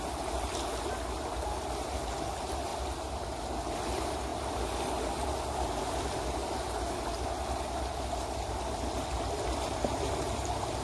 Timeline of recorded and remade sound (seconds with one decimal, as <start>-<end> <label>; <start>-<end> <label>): 0.0-10.8 recorded